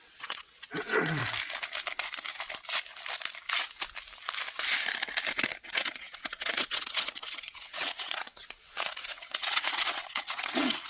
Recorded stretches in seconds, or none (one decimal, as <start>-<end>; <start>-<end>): 1.2-5.6